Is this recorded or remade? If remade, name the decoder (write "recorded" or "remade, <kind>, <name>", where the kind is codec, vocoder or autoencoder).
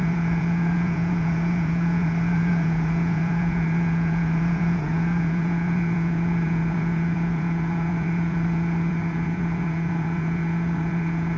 remade, vocoder, Vocos